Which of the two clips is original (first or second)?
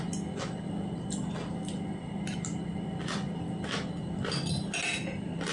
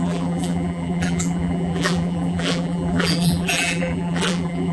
first